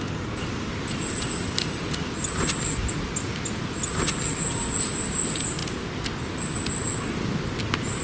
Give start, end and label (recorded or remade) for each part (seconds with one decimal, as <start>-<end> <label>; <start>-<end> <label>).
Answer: 0.0-8.0 recorded